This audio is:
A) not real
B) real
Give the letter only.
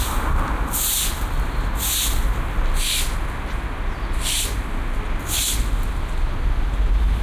B